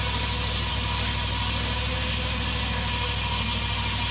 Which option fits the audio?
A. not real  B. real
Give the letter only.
B